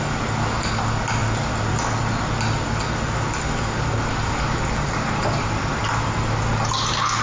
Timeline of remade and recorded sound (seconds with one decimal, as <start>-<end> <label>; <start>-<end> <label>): 0.0-7.2 recorded